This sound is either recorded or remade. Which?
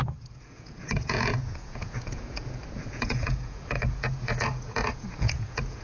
remade